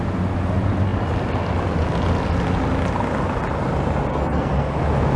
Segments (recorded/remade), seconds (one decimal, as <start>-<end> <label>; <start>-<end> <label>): 0.0-4.1 recorded; 4.1-4.7 remade; 4.7-5.2 recorded